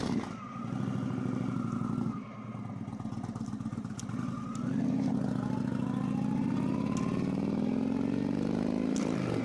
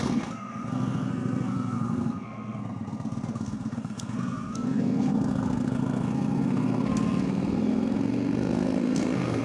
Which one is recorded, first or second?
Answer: first